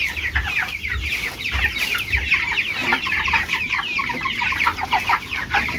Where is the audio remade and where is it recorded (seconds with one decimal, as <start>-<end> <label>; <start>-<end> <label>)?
0.0-2.8 recorded; 2.8-5.8 remade